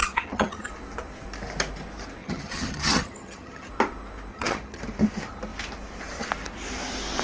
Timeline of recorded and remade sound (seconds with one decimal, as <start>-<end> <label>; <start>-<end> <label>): 0.0-0.7 remade; 0.7-2.2 recorded; 2.2-3.7 remade; 3.7-4.3 recorded; 4.3-4.8 remade; 4.8-7.2 recorded